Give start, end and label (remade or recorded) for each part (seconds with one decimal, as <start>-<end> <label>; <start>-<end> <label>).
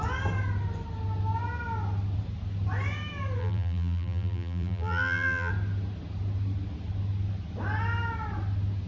0.0-3.4 recorded; 3.4-5.5 remade; 5.5-8.9 recorded